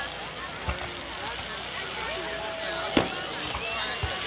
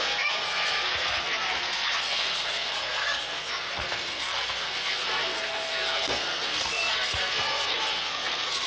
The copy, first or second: second